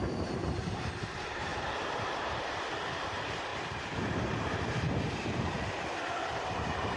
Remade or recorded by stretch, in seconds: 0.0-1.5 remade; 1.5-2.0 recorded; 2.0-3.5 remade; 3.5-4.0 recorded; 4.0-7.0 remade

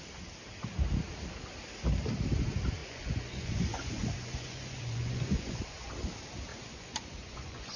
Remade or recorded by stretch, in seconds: 0.0-2.8 recorded; 2.8-5.9 remade; 5.9-6.5 recorded; 6.5-7.8 remade

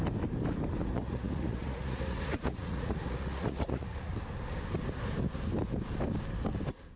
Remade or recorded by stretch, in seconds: 0.0-0.8 recorded; 0.8-4.1 remade; 4.1-7.0 recorded

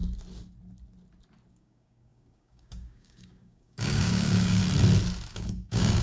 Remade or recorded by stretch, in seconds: 0.0-1.5 recorded; 1.5-4.6 remade; 4.6-5.3 recorded; 5.3-6.0 remade

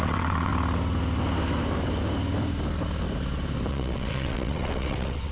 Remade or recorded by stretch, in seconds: 0.0-0.5 remade; 0.5-3.7 recorded; 3.7-5.3 remade